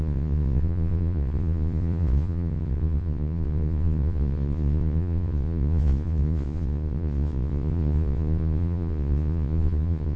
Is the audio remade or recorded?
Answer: remade